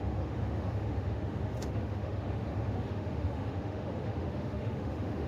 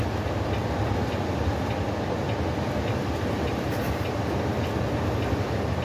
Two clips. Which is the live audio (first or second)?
second